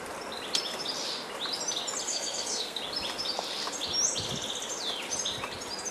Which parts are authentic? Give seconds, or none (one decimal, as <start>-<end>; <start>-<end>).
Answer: 0.0-2.1; 2.8-5.9